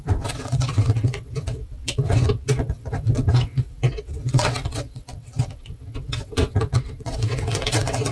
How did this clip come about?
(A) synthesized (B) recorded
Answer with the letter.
A